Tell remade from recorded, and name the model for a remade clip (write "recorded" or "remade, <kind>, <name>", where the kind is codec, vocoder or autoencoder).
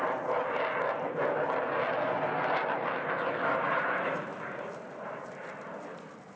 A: recorded